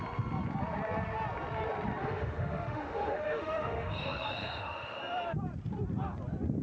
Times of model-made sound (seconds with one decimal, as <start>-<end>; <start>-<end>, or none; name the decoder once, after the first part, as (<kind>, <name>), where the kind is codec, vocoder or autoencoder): 2.0-5.0 (autoencoder, DAC-VAE)